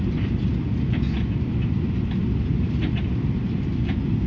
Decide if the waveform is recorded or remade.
recorded